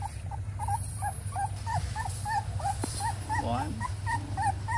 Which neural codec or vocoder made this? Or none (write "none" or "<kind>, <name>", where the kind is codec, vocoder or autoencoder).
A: none